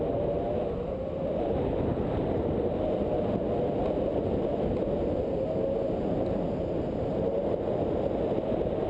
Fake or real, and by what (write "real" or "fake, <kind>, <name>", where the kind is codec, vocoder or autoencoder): real